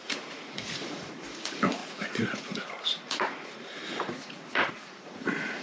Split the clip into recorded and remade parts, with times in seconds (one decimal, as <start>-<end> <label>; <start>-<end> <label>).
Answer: 0.0-5.6 remade